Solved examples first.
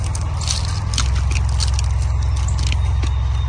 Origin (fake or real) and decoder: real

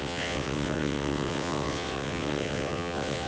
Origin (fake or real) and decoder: fake, vocoder, WaveNeXt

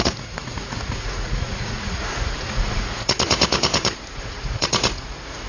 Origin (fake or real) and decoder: fake, vocoder, Vocos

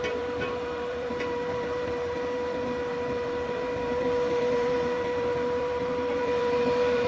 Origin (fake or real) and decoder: fake, vocoder, BigVGAN v2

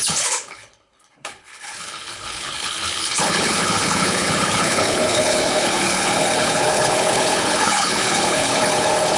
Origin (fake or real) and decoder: fake, codec, HILCodec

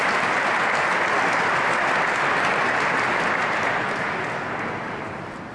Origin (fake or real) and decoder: real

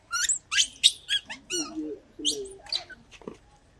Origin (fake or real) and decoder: real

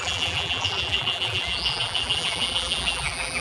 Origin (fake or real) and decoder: fake, vocoder, BigVGAN v2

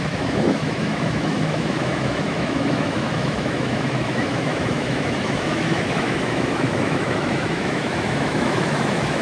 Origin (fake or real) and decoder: fake, autoencoder, DAC-VAE